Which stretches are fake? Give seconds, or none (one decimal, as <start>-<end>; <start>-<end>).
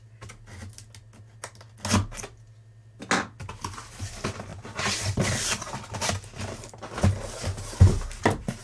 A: none